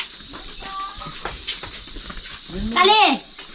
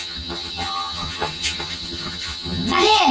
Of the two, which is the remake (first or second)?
second